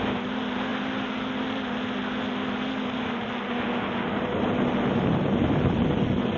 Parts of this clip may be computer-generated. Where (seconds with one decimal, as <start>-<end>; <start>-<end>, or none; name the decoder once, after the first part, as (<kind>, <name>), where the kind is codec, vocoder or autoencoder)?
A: none